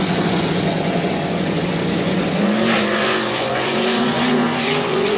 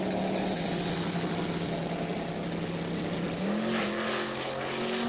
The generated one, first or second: first